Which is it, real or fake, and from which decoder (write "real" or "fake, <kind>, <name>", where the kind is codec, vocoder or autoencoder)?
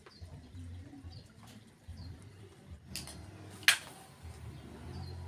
real